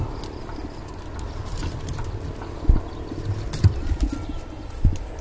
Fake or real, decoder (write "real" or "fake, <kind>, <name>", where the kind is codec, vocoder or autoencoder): real